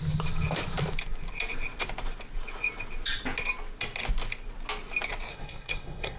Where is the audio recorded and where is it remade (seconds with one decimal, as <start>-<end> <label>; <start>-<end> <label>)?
0.0-5.3 recorded; 5.3-6.2 remade